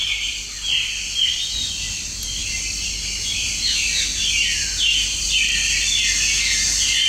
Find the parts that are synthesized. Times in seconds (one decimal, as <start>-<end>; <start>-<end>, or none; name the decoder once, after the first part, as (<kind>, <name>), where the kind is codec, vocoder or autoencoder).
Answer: 0.0-1.5 (vocoder, BigVGAN v2)